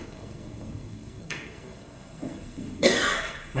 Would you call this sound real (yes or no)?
no